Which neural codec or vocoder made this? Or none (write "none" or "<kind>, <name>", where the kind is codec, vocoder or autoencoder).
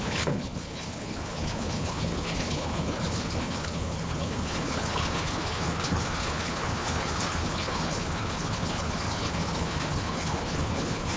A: codec, HILCodec